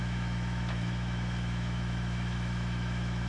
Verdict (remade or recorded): remade